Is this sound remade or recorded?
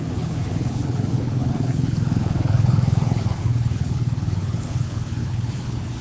remade